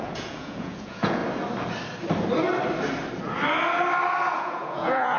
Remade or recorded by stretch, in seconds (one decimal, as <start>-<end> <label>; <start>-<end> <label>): 0.0-1.2 remade; 1.2-4.3 recorded; 4.3-5.2 remade